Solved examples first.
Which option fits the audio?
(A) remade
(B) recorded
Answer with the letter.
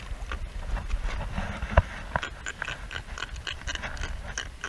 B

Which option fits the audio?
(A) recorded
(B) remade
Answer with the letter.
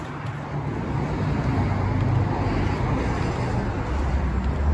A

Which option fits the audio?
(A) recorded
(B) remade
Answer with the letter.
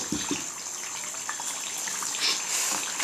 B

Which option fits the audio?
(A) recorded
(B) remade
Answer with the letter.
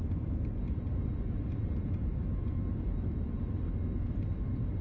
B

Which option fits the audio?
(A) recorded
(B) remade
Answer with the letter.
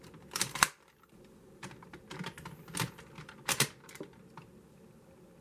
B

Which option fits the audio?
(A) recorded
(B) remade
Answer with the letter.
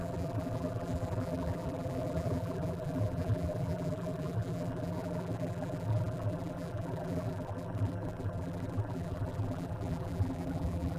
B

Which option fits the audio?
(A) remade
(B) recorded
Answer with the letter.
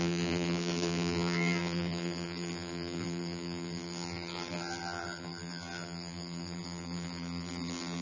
A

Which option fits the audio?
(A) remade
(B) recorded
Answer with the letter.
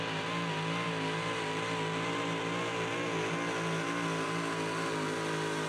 B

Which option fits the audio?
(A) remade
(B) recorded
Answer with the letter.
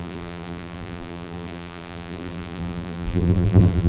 A